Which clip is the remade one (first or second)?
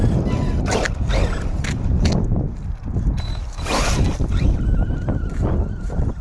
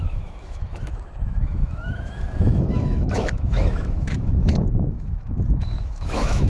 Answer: second